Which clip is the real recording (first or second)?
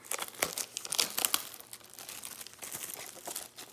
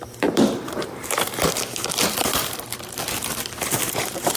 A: first